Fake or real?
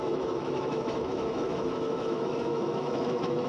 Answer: fake